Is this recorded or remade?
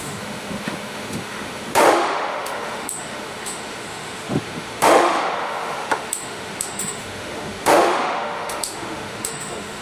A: remade